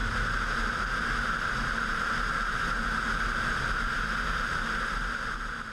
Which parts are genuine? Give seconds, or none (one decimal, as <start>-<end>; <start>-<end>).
0.0-5.7